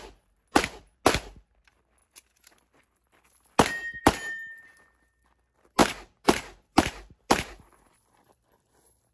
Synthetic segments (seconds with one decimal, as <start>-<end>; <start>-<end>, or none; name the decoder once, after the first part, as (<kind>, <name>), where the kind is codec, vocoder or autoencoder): 5.8-8.7 (vocoder, BigVGAN v2)